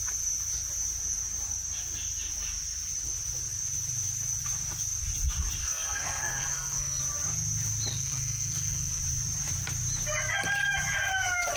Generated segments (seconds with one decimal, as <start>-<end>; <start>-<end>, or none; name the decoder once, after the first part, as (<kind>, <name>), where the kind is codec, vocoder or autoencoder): 5.6-7.0 (codec, SNAC); 7.9-9.0